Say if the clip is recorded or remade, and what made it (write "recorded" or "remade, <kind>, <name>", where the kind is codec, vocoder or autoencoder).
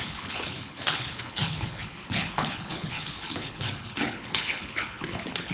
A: remade, codec, HILCodec